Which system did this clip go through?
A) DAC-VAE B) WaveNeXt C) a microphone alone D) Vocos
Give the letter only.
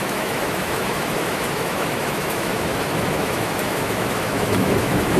A